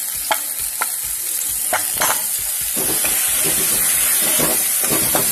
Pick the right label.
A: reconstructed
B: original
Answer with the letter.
B